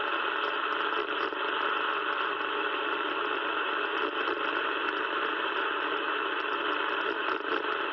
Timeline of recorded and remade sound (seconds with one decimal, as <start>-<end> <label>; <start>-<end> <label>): 0.0-7.9 recorded